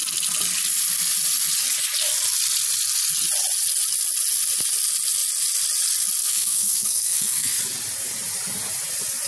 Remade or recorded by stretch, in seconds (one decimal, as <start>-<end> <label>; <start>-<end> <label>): 0.0-6.2 recorded; 6.2-7.6 remade; 7.6-9.3 recorded